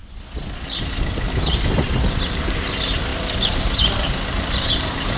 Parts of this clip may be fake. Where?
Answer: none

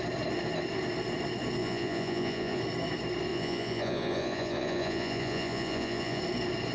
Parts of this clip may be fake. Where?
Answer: 1.6-2.6 (vocoder, Vocos); 3.3-6.2

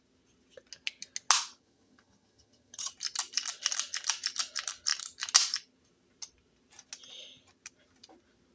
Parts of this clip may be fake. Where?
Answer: 1.5-2.9 (vocoder, HiFi-GAN)

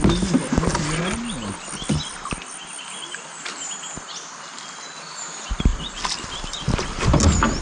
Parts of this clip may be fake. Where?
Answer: none

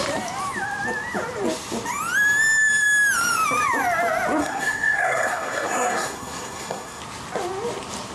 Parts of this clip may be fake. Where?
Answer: 4.4-7.0 (codec, SNAC)

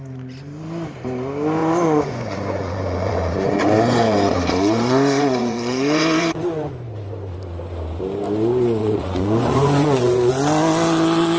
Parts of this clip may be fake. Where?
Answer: 1.6-6.7 (vocoder, Vocos); 8.8-10.3